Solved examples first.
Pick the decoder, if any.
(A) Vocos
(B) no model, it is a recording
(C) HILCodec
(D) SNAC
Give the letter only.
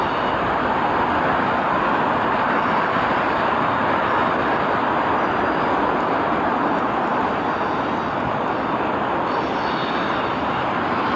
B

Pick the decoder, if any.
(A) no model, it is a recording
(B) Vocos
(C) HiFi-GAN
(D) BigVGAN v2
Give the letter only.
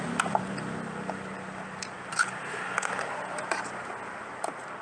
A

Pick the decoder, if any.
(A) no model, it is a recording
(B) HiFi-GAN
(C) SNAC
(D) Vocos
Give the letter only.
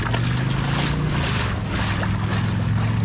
A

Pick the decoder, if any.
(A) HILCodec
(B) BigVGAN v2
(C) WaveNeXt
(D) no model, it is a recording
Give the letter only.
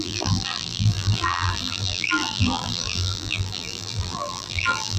B